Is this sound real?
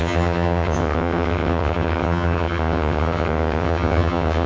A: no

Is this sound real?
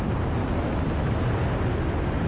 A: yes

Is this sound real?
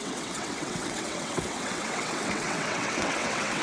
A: no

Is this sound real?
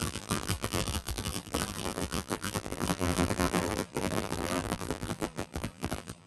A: no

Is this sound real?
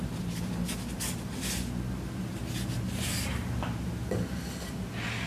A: yes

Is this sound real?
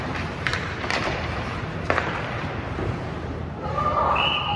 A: no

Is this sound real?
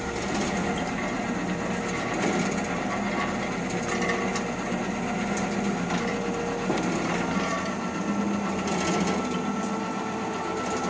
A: yes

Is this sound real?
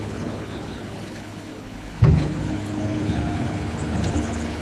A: no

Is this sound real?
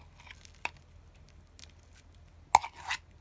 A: yes